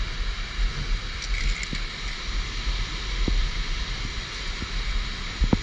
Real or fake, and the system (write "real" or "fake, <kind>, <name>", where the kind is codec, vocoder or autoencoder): real